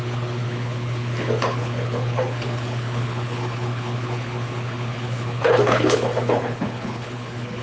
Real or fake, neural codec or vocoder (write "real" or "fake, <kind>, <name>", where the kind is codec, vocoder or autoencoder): fake, codec, HILCodec